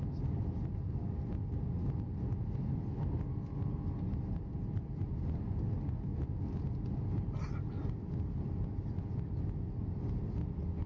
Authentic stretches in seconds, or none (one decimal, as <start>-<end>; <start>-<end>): 0.0-10.9